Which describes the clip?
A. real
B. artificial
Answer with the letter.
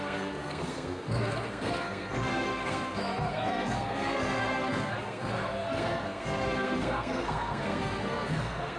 B